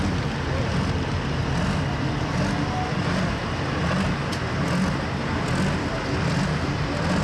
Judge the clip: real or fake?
real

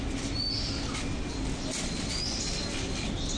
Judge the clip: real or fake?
real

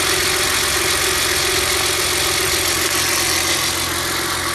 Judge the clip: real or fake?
real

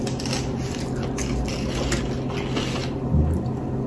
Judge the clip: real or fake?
real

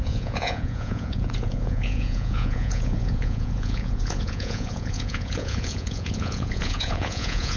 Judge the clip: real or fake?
fake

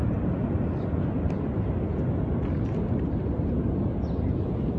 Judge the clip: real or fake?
real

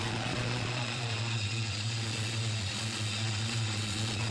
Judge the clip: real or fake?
fake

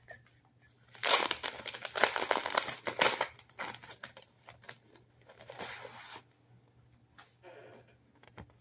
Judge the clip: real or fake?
real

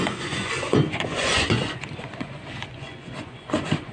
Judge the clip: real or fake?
fake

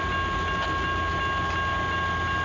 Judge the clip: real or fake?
real